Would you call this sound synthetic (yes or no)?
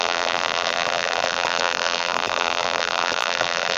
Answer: yes